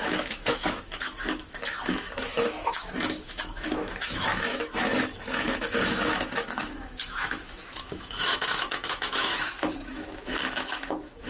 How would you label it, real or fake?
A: fake